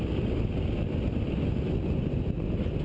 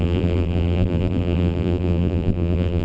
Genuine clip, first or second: first